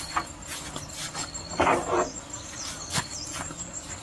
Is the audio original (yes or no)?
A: yes